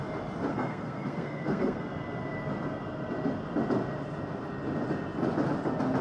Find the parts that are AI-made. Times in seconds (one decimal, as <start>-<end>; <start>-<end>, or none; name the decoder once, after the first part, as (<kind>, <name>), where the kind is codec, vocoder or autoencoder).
0.5-1.8 (codec, SNAC)